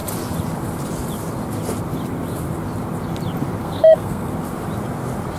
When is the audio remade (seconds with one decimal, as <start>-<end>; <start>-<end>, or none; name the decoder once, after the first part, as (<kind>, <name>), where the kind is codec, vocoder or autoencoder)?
3.6-4.3 (codec, SNAC)